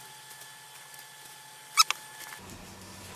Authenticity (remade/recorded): recorded